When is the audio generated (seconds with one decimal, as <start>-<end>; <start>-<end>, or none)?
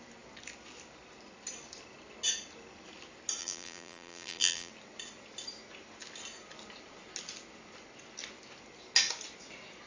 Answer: 3.4-4.7